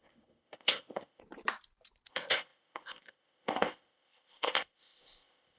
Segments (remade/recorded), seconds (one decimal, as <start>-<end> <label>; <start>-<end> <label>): 0.0-1.2 remade; 1.2-2.1 recorded; 2.1-5.6 remade